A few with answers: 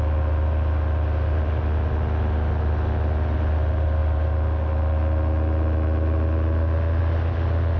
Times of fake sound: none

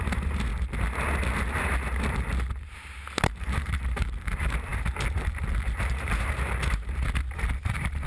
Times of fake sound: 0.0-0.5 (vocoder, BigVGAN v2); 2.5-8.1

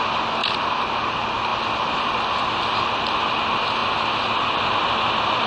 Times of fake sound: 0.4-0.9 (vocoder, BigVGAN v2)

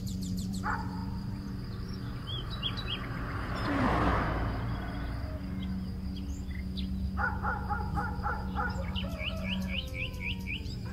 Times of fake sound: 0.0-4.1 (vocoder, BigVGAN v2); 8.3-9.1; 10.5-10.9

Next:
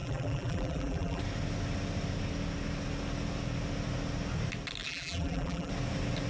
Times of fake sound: 0.0-1.2 (vocoder, BigVGAN v2); 4.8-5.7

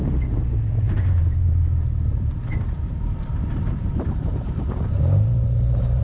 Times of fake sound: 0.0-1.6 (vocoder, BigVGAN v2); 2.1-6.0

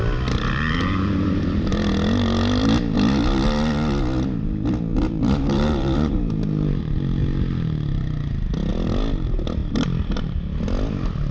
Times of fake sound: 4.9-6.8 (vocoder, BigVGAN v2); 9.6-10.3

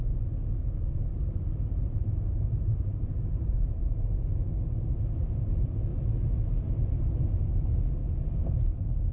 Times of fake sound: 1.1-4.5 (vocoder, BigVGAN v2); 5.9-7.5